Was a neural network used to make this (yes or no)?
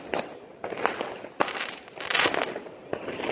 no